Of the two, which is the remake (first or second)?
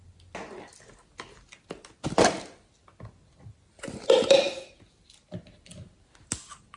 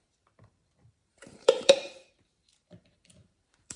second